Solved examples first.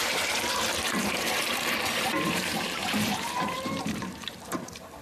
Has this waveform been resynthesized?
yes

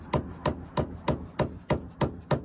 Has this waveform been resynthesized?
no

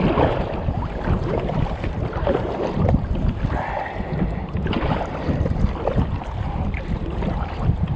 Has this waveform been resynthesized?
no